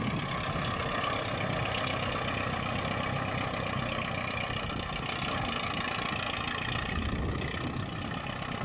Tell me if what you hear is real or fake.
real